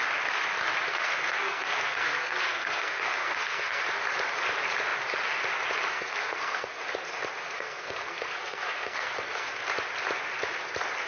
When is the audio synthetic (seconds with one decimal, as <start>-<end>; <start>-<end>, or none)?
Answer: 0.9-3.8; 5.9-6.8; 7.4-9.5